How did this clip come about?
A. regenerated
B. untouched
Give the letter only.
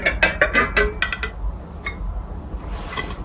B